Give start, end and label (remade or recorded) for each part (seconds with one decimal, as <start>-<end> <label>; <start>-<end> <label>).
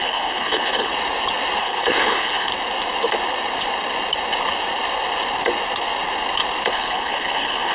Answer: 0.0-0.9 remade; 0.9-1.6 recorded; 1.6-2.5 remade; 2.5-6.7 recorded; 6.7-7.7 remade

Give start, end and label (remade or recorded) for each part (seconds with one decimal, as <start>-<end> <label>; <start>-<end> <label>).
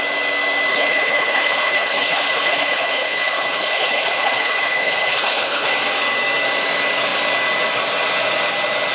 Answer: 0.0-0.7 recorded; 0.7-5.7 remade; 5.7-8.9 recorded